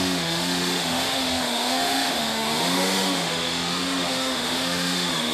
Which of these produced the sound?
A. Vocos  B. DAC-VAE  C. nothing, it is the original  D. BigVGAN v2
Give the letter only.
B